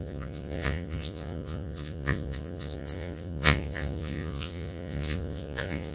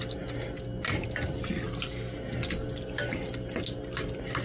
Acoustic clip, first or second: second